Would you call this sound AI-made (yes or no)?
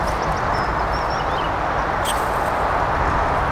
no